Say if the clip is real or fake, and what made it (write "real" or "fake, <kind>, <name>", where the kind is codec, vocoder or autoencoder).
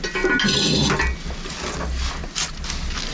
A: real